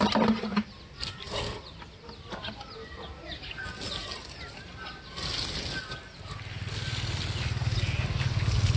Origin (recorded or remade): recorded